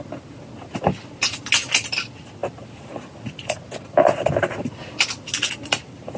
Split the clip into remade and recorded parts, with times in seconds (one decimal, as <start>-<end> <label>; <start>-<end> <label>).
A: 0.0-6.2 recorded